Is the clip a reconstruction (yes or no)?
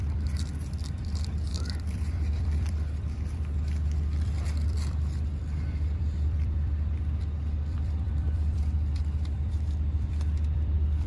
yes